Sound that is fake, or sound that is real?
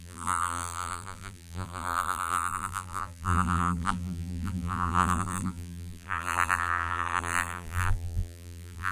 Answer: fake